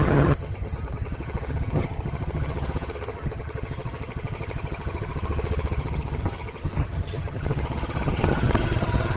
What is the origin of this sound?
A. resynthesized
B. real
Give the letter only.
A